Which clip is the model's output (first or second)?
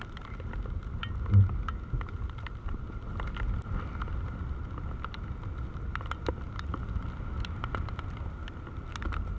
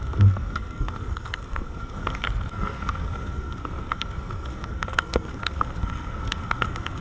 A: second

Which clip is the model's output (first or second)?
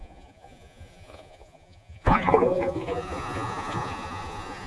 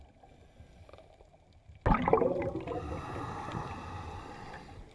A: first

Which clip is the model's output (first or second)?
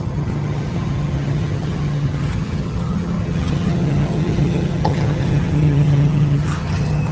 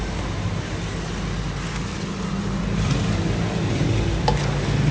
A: first